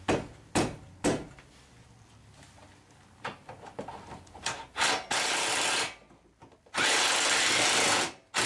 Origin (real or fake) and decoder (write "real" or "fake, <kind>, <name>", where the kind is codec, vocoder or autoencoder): real